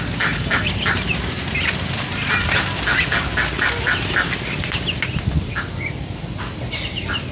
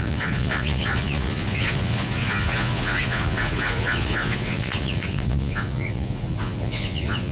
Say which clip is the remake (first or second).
second